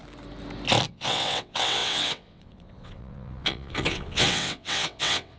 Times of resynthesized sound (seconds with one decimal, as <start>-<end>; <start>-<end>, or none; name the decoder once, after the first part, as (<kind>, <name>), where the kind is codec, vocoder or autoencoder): 0.9-5.4 (vocoder, WaveNeXt)

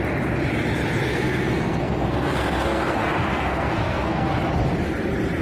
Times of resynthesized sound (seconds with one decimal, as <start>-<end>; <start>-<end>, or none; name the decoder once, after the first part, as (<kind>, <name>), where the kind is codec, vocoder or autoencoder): 1.1-4.3 (codec, SNAC)

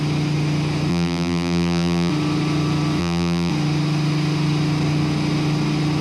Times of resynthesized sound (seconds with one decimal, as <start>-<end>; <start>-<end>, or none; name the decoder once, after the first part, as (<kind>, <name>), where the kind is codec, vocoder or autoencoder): 0.9-2.1 (vocoder, BigVGAN v2); 3.0-3.5

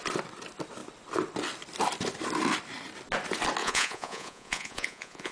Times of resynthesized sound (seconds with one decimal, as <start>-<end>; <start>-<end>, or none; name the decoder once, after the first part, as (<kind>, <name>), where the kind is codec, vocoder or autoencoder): 3.6-5.3 (vocoder, Vocos)

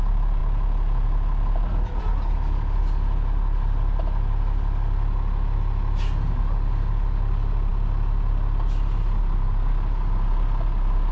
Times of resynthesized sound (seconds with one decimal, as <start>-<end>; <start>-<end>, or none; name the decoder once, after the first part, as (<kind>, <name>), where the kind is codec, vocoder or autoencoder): none

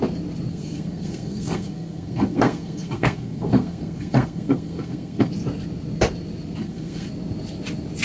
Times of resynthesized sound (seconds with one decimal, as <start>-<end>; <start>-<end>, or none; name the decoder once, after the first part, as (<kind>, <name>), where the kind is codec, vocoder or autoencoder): 0.5-5.3 (codec, SNAC); 6.6-7.1

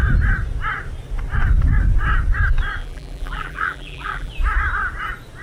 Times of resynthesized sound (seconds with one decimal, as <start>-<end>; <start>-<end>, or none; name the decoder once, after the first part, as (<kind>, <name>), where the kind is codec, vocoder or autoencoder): 2.8-4.3 (vocoder, BigVGAN v2)